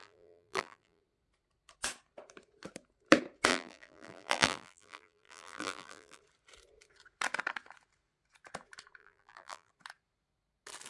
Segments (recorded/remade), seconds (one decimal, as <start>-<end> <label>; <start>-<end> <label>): 0.0-1.0 remade; 1.0-3.5 recorded; 3.5-6.2 remade; 6.2-9.0 recorded; 9.0-9.7 remade; 9.7-10.9 recorded